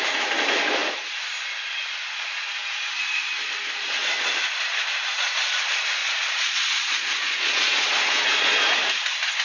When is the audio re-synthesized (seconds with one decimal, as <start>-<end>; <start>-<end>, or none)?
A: 6.0-8.6